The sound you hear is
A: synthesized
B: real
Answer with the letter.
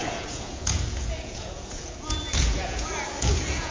A